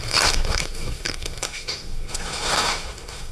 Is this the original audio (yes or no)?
no